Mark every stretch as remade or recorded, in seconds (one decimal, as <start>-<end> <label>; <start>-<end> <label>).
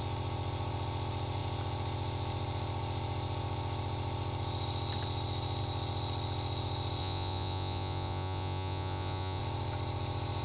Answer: 0.0-7.0 recorded; 7.0-9.4 remade; 9.4-10.4 recorded